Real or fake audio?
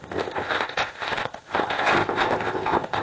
fake